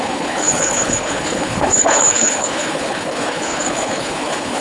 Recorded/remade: remade